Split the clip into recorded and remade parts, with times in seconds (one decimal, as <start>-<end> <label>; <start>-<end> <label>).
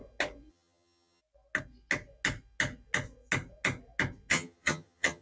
0.0-0.5 recorded; 0.5-1.2 remade; 1.2-4.3 recorded; 4.3-5.2 remade